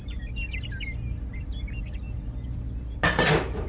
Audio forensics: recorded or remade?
recorded